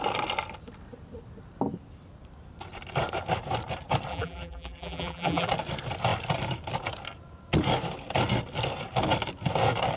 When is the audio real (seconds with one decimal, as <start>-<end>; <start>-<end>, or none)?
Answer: 0.0-4.1; 5.5-10.0